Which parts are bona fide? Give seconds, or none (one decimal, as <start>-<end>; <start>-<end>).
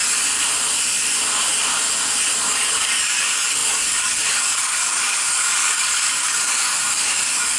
0.0-2.5